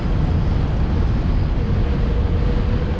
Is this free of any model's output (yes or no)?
yes